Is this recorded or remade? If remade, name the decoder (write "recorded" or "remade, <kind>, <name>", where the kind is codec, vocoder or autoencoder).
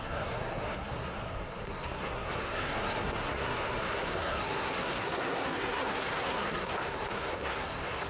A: remade, codec, SNAC